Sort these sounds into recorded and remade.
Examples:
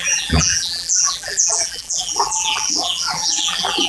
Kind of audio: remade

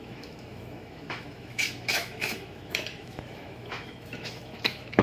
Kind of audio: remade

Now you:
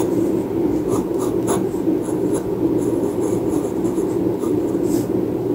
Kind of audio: recorded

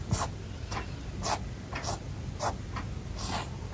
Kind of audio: recorded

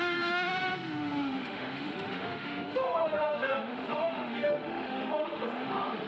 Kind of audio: remade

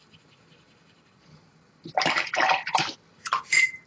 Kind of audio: remade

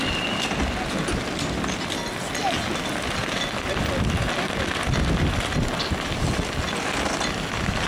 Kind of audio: recorded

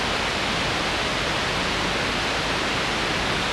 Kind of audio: recorded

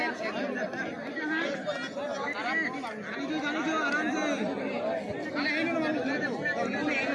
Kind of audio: recorded